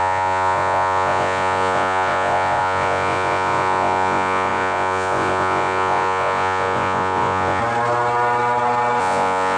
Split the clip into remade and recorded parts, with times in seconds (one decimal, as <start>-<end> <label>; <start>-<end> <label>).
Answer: 0.0-7.6 remade; 7.6-9.0 recorded; 9.0-9.6 remade